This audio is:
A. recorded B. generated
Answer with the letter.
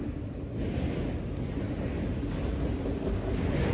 A